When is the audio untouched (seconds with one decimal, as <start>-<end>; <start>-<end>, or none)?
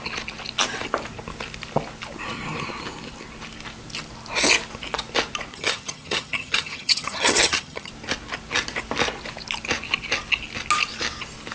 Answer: 0.0-5.5; 7.9-11.5